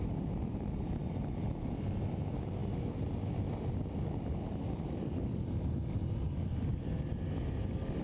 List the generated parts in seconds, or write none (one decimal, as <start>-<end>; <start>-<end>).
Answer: none